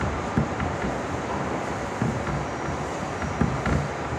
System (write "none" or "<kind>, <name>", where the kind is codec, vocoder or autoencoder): none